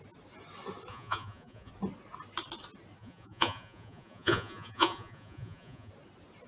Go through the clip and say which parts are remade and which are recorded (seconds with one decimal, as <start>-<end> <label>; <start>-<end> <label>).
0.0-0.9 recorded; 0.9-1.7 remade; 1.7-3.0 recorded; 3.0-5.9 remade; 5.9-6.5 recorded